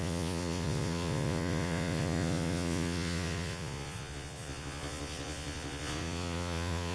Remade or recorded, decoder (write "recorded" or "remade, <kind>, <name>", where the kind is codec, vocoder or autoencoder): remade, vocoder, Vocos